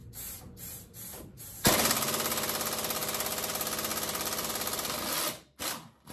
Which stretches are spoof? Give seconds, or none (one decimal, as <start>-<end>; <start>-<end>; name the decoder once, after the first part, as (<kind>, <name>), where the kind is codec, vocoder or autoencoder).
0.0-1.4 (vocoder, BigVGAN v2); 3.9-4.5